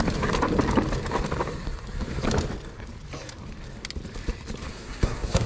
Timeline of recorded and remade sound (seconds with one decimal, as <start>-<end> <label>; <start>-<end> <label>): 0.0-4.7 recorded; 4.7-5.5 remade